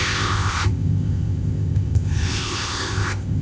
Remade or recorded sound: remade